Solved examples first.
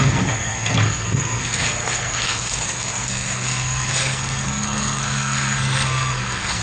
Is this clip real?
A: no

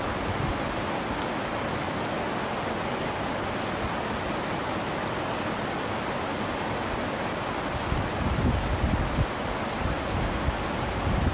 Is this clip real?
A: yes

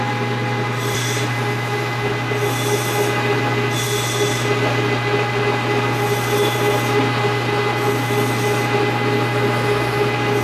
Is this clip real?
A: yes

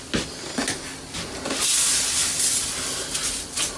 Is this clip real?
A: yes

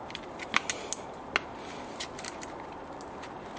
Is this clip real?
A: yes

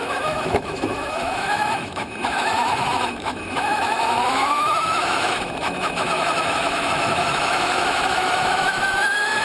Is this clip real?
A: no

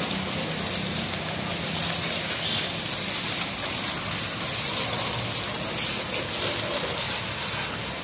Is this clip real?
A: yes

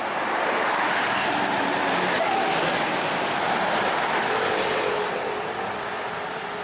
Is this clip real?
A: yes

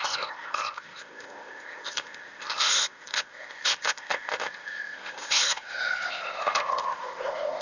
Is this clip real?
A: no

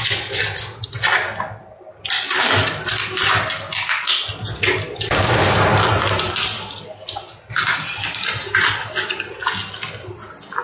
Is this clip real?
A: yes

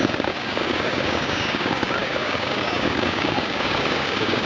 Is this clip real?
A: no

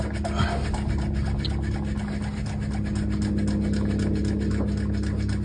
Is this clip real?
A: yes